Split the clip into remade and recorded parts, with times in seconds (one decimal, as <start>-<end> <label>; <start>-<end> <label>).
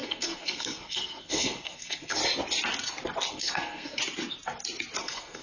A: 0.0-2.2 remade; 2.2-3.3 recorded; 3.3-4.0 remade; 4.0-5.0 recorded; 5.0-5.4 remade